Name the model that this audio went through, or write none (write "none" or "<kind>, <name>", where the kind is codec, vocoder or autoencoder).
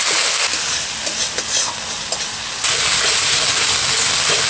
none